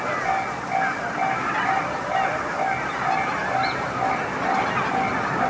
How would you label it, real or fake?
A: real